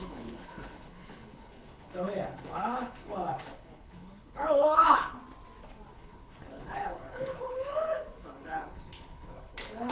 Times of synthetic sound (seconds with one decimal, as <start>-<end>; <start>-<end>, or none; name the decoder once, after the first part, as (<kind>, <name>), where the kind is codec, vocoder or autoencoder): 0.0-5.2 (codec, HILCodec); 5.9-9.9